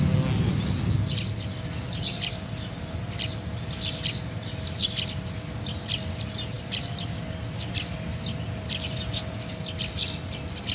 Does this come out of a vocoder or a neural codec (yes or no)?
no